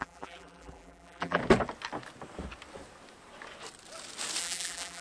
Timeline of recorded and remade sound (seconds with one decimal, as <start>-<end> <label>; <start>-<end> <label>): 0.0-1.4 remade; 1.4-4.4 recorded; 4.4-5.0 remade